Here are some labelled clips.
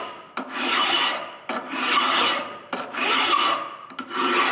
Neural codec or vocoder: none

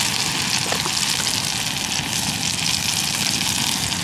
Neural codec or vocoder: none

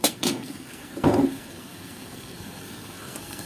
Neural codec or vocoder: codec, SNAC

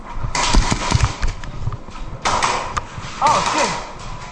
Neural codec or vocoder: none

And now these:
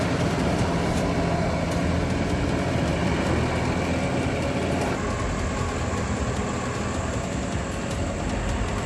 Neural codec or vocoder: none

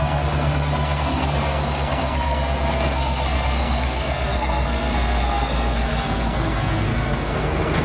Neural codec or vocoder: codec, SNAC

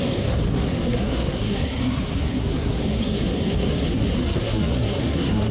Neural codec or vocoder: codec, SNAC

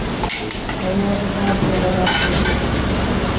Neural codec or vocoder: none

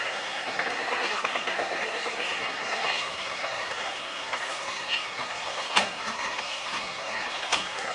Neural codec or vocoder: codec, SNAC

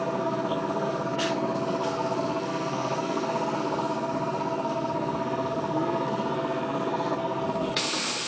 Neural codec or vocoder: codec, SNAC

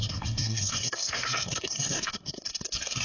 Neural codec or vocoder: codec, SNAC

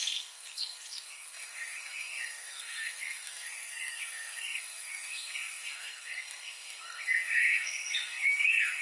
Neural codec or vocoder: codec, SNAC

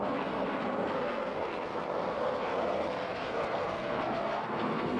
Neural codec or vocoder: codec, SNAC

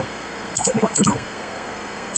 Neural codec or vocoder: codec, SNAC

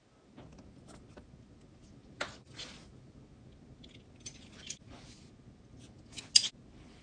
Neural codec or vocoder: none